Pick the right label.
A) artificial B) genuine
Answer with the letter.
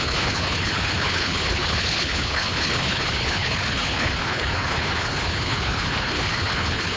A